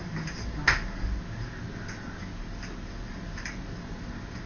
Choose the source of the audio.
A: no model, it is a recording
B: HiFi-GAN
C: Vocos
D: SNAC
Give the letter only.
A